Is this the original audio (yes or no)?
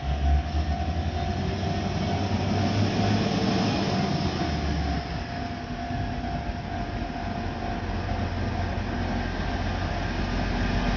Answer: yes